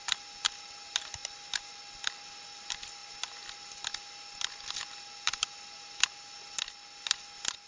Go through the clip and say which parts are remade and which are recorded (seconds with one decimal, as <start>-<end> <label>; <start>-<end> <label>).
0.0-7.7 recorded

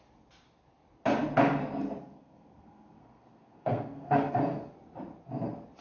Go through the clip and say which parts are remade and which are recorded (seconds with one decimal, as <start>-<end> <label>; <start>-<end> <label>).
0.0-2.0 recorded; 2.0-4.4 remade; 4.4-5.8 recorded